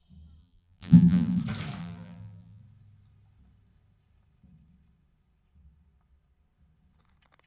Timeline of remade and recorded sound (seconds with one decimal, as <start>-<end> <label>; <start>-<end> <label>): 0.0-0.4 recorded; 0.4-1.4 remade; 1.4-1.8 recorded; 1.8-2.6 remade; 2.6-7.5 recorded